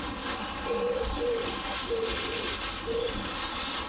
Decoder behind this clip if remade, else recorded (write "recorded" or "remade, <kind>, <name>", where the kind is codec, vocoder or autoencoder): recorded